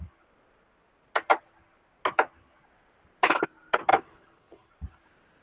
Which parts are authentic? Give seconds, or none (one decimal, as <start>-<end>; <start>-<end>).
0.0-3.9; 4.7-5.4